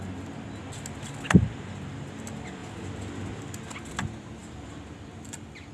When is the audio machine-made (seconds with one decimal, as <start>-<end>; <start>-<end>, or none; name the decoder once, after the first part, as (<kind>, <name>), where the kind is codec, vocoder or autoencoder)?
4.4-5.7 (vocoder, BigVGAN v2)